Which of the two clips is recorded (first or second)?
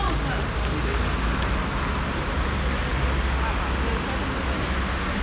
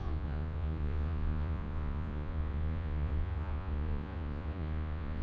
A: first